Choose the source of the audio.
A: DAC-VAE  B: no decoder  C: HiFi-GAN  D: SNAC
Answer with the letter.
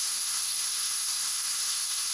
D